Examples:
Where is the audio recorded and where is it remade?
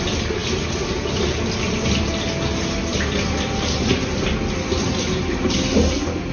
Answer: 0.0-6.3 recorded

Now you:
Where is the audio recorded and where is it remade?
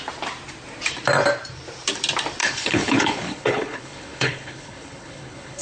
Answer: 0.0-2.4 recorded; 2.4-5.6 remade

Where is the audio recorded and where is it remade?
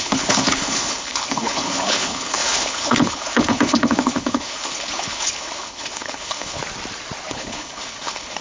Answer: 0.0-6.6 remade; 6.6-7.3 recorded; 7.3-8.4 remade